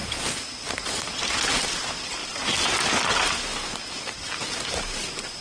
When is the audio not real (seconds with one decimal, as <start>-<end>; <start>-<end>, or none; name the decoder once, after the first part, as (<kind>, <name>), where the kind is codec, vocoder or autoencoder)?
1.7-2.2 (vocoder, BigVGAN v2); 3.0-3.5; 4.7-5.4